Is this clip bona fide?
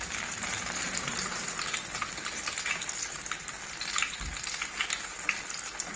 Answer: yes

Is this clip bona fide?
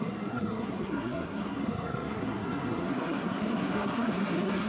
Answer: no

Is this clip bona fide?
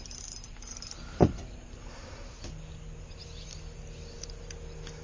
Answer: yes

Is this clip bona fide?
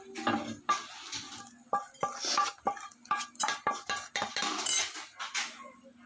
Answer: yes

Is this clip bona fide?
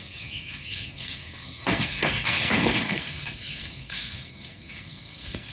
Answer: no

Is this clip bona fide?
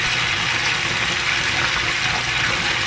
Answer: yes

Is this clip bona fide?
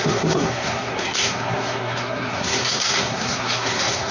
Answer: no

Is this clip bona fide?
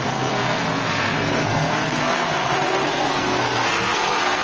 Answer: no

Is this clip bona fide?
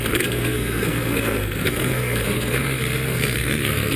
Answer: no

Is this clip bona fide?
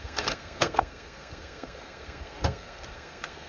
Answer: no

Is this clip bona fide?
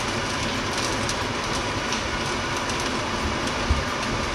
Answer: yes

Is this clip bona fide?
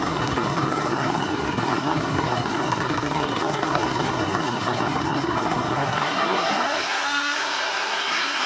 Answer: no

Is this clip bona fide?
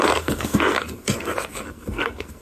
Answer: no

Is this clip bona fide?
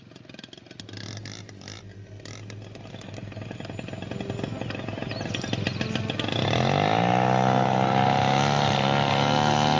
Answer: yes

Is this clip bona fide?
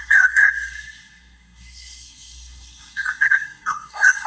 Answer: no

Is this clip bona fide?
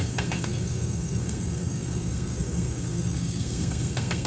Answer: no